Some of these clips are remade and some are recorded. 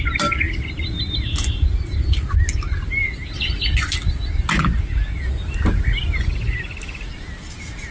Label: recorded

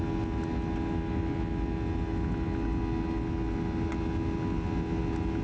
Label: recorded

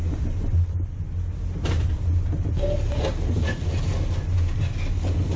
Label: recorded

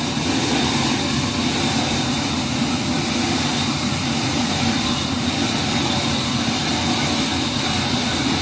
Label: recorded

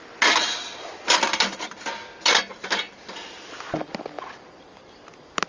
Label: recorded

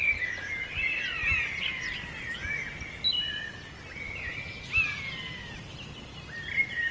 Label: recorded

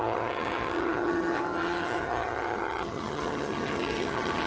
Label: remade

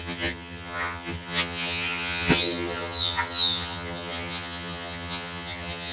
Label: remade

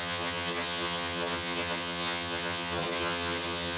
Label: remade